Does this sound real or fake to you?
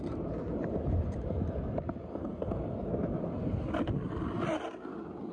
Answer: real